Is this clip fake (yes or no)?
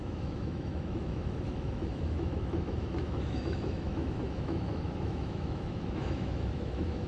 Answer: yes